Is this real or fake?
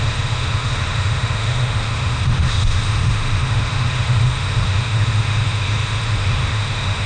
fake